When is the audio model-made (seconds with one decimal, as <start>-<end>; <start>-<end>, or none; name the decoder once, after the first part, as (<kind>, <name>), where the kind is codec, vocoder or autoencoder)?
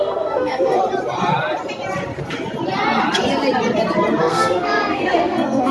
0.0-0.8 (codec, SNAC); 4.2-5.7